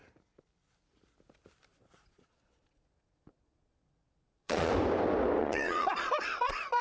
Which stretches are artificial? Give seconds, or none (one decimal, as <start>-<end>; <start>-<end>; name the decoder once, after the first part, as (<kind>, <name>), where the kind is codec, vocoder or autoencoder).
1.7-4.7 (vocoder, Vocos); 5.4-6.8